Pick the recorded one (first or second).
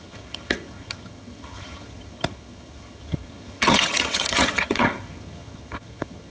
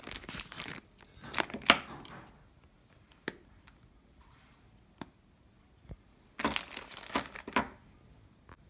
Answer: second